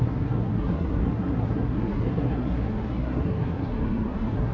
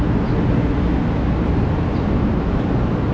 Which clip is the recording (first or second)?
second